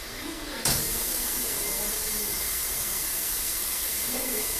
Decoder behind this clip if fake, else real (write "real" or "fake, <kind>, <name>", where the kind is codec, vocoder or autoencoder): fake, codec, SNAC